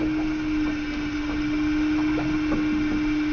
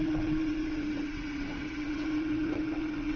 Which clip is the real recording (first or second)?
first